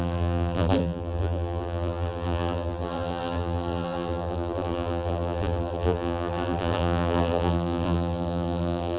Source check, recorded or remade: remade